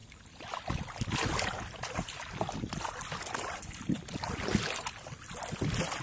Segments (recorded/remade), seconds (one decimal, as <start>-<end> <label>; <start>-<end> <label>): 0.0-6.0 recorded